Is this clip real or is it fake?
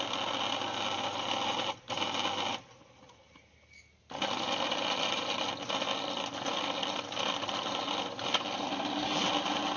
real